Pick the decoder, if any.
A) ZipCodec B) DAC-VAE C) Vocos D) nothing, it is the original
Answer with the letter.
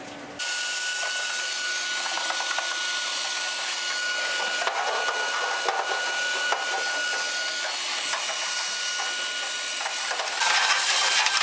D